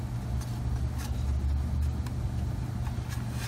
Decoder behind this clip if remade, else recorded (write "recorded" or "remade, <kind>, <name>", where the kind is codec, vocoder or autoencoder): recorded